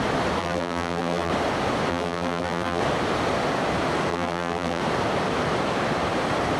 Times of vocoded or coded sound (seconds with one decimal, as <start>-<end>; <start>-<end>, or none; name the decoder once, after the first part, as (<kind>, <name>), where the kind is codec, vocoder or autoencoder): 0.4-1.3 (vocoder, BigVGAN v2); 1.9-2.8; 4.1-4.8